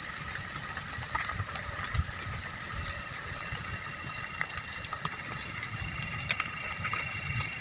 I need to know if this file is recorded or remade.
recorded